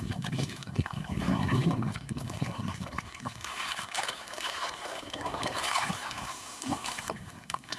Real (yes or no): no